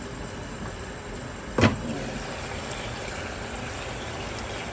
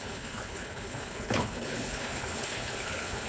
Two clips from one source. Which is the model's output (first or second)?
second